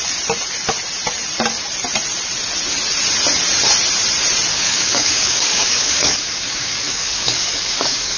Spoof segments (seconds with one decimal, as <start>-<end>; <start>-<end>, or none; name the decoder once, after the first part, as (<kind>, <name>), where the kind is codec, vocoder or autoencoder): 4.5-8.2 (codec, DAC)